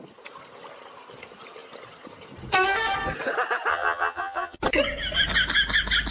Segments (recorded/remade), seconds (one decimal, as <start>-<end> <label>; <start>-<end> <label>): 0.0-3.7 recorded; 3.7-4.6 remade; 4.6-6.1 recorded